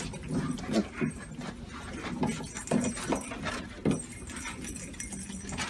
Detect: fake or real real